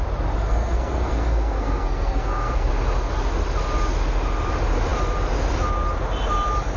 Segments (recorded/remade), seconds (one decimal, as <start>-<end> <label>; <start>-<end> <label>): 0.0-0.4 recorded; 0.4-2.7 remade; 2.7-6.8 recorded